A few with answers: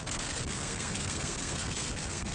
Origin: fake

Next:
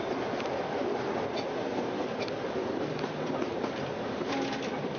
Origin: real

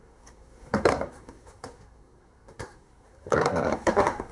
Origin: fake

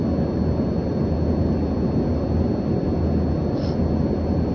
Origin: real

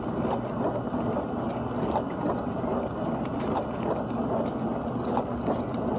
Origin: real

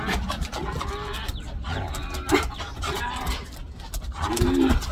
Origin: real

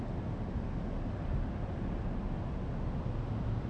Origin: real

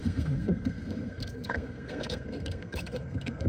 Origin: fake